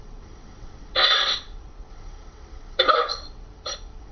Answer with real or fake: fake